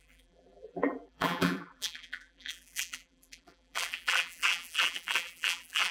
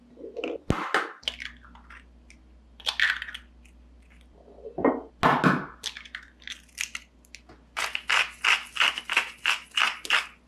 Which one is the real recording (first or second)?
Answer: second